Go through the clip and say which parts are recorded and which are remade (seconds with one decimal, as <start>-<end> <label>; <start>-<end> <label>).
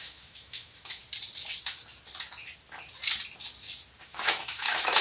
0.0-1.0 remade; 1.0-4.0 recorded; 4.0-5.0 remade